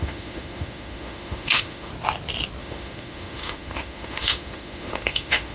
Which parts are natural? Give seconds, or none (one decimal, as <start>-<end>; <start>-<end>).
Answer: 1.9-2.6